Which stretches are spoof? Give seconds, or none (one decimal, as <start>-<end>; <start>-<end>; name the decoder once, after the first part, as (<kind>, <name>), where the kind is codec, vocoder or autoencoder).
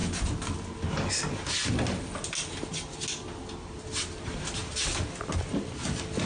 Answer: none